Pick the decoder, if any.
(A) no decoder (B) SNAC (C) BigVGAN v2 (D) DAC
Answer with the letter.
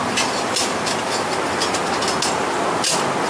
A